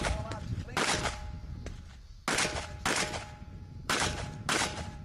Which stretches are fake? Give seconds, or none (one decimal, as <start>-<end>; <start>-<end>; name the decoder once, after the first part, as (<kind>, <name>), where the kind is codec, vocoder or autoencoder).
0.0-0.5 (vocoder, BigVGAN v2); 3.5-5.0